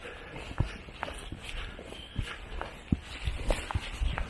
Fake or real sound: real